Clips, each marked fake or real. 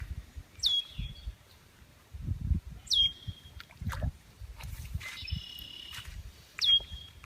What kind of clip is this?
fake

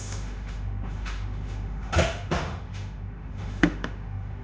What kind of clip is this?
fake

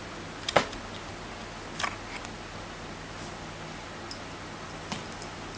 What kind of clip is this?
real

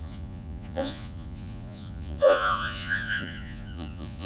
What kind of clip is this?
fake